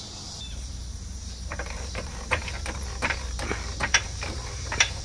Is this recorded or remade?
remade